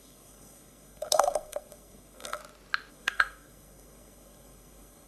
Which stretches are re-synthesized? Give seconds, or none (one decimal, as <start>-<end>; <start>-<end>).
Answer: 0.0-2.4; 2.9-5.1